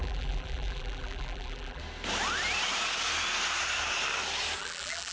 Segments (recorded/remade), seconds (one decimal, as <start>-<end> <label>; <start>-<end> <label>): 0.0-1.8 remade; 1.8-4.6 recorded; 4.6-5.1 remade